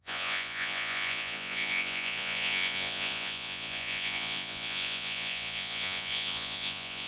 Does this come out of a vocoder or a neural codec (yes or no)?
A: yes